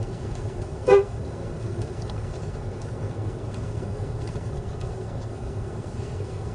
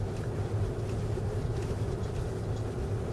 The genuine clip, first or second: second